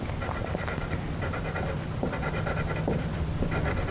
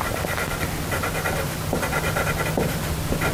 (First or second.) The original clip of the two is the second